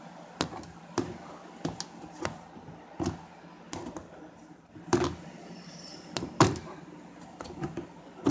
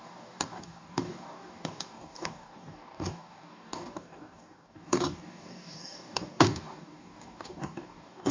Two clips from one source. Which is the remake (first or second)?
second